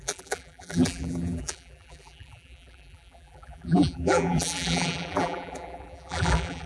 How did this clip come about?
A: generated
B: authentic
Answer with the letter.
A